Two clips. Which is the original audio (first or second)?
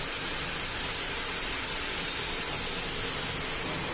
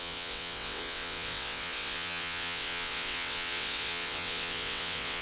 first